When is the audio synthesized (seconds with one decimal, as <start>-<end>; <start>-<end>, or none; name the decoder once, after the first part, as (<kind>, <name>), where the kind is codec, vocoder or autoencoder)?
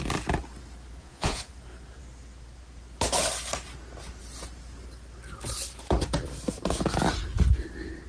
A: 1.0-1.5 (vocoder, Vocos)